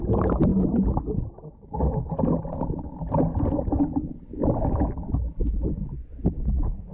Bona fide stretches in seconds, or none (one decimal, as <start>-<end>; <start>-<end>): 0.0-6.9